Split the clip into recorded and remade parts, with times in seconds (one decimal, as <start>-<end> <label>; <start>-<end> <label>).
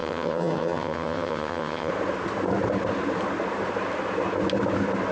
0.0-1.9 remade; 1.9-5.1 recorded